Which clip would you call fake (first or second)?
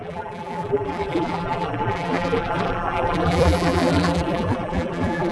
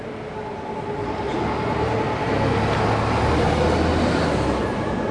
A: first